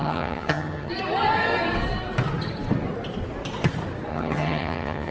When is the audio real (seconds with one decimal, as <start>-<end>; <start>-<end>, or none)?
0.9-4.1